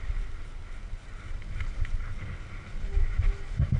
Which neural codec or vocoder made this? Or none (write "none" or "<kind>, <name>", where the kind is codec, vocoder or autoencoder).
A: none